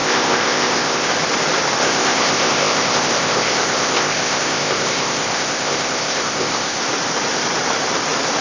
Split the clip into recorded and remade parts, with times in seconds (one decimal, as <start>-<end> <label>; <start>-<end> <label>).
0.0-1.1 remade; 1.1-1.8 recorded; 1.8-6.8 remade; 6.8-8.4 recorded